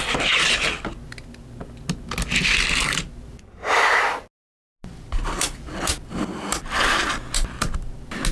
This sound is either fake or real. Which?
real